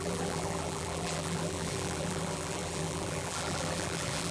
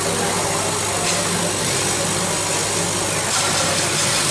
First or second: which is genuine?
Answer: second